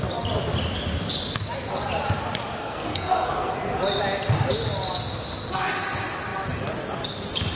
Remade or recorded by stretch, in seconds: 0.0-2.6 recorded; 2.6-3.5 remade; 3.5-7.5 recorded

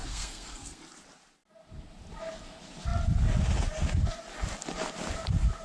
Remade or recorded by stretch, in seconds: 0.0-0.8 remade; 0.8-5.6 recorded

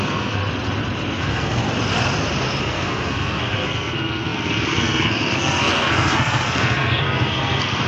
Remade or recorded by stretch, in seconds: 0.0-0.4 remade; 0.4-1.2 recorded; 1.2-1.6 remade; 1.6-2.6 recorded; 2.6-7.9 remade

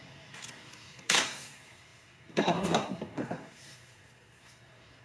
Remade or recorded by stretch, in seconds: 0.0-5.0 remade

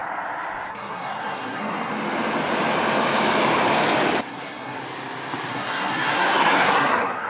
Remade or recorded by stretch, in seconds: 0.0-0.7 recorded; 0.7-1.9 remade; 1.9-4.3 recorded; 4.3-4.8 remade; 4.8-5.5 recorded; 5.5-7.3 remade

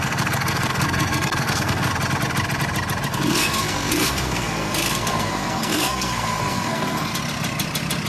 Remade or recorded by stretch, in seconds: 0.0-1.9 remade; 1.9-3.1 recorded; 3.1-7.1 remade; 7.1-8.1 recorded